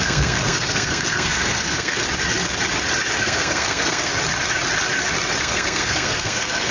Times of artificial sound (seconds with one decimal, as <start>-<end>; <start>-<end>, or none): 0.0-2.0; 3.2-4.1; 5.4-6.7